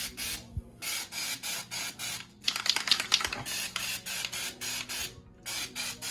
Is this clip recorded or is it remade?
recorded